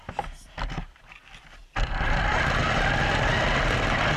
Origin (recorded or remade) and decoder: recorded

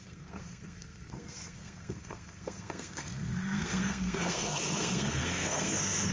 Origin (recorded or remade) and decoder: remade, codec, SNAC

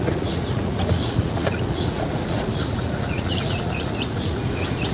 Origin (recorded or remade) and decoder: remade, vocoder, Vocos